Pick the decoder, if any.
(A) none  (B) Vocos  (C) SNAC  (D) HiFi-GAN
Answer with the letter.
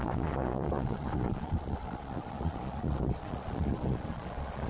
B